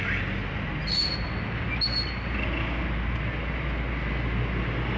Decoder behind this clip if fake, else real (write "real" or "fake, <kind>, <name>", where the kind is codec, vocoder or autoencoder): real